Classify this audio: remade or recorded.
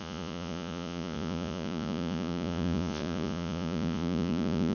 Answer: remade